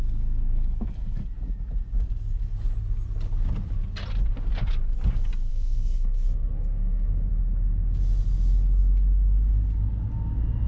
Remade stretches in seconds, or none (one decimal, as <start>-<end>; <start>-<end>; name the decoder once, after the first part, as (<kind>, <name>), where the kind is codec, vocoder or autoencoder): 5.5-7.3 (codec, SNAC)